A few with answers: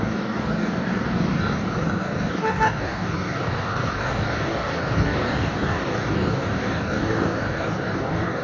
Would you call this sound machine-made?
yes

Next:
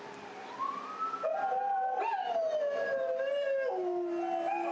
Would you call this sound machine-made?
no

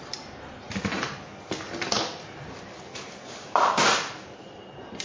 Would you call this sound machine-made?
no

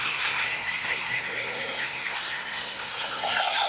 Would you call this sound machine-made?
yes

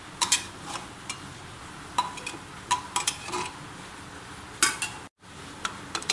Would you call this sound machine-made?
no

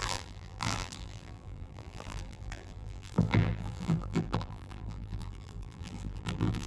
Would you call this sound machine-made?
yes